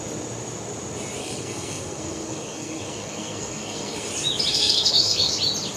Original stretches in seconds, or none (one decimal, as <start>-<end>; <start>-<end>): 0.0-1.2; 4.1-4.5; 5.3-5.8